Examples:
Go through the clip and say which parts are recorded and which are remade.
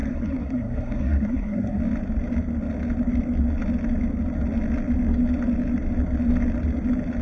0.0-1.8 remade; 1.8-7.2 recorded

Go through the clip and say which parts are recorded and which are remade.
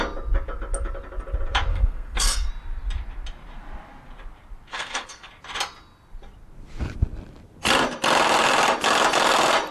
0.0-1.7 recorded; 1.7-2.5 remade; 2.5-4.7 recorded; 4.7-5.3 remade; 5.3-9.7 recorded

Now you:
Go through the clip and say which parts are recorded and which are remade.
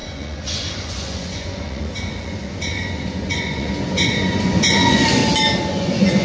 0.0-5.2 remade; 5.2-5.7 recorded; 5.7-6.2 remade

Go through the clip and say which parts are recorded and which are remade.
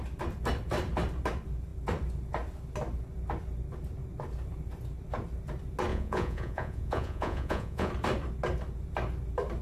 0.0-5.9 recorded; 5.9-7.9 remade; 7.9-9.6 recorded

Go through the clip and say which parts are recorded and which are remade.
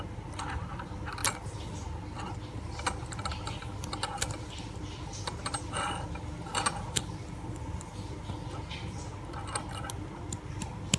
0.0-11.0 recorded